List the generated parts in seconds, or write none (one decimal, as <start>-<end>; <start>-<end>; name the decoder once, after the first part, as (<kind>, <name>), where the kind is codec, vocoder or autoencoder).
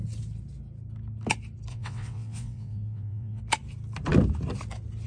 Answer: 1.7-3.4 (vocoder, WaveNeXt)